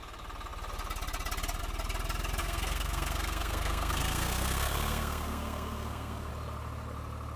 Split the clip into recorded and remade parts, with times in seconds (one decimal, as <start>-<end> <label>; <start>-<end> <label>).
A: 0.0-2.4 recorded; 2.4-6.3 remade; 6.3-7.4 recorded